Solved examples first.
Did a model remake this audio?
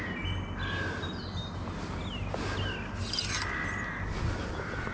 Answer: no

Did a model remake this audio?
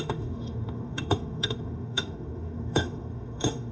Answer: yes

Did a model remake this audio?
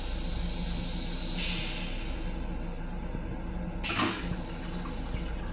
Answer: no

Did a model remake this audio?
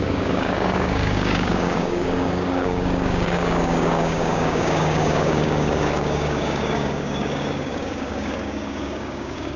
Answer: yes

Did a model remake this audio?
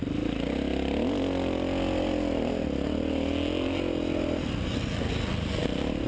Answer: no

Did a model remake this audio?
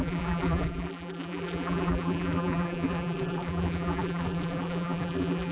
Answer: yes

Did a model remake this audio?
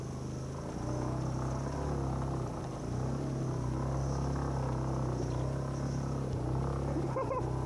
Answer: no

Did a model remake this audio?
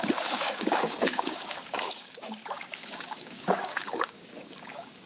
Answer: yes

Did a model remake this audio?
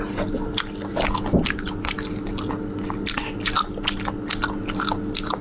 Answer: no